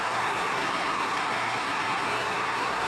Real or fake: fake